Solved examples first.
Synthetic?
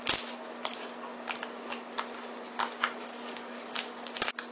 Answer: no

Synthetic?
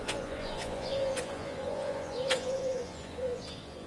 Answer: yes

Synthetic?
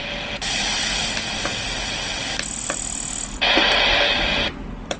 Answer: yes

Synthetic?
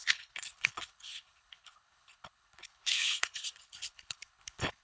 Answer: yes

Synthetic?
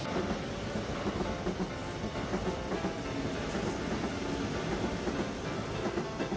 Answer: no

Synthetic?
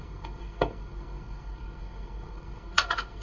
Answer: yes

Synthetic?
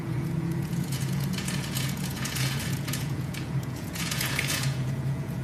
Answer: yes